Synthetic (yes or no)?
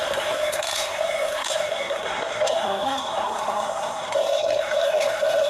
yes